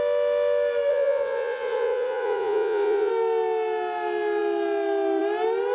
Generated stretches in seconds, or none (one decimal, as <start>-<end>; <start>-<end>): 0.9-3.1